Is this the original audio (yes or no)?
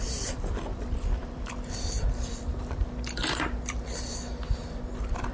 no